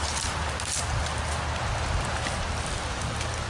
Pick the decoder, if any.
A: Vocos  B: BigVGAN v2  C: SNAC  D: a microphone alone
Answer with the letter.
D